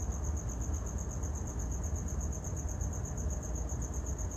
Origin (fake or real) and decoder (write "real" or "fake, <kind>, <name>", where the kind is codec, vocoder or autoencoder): real